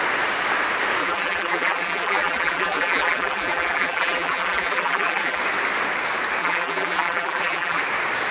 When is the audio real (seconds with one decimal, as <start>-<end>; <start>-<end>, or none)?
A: 0.0-1.0; 5.4-6.4; 7.8-8.3